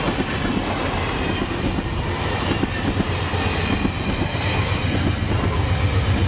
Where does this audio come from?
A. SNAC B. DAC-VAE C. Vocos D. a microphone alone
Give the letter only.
D